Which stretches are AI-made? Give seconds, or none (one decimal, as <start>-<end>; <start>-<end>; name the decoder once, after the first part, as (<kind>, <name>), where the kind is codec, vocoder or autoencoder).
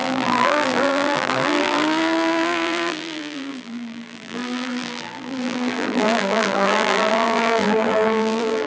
0.0-8.7 (vocoder, BigVGAN v2)